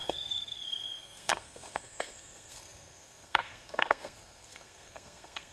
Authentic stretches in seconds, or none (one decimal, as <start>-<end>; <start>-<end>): none